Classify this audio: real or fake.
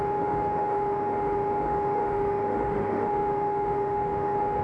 fake